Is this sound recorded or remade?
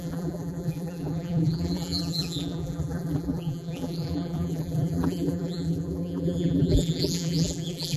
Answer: remade